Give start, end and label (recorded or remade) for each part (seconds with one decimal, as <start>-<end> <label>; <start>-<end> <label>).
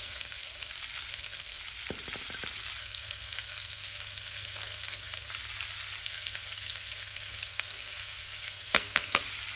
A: 0.0-0.7 remade; 0.7-1.1 recorded; 1.1-1.6 remade; 1.6-2.8 recorded; 2.8-5.3 remade; 5.3-6.0 recorded; 6.0-9.2 remade; 9.2-9.6 recorded